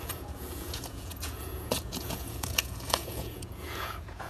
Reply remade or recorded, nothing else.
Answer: remade